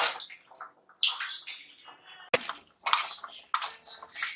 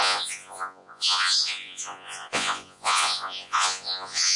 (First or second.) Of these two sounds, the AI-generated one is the second